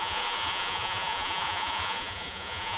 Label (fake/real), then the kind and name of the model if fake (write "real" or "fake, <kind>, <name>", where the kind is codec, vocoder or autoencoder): fake, vocoder, Vocos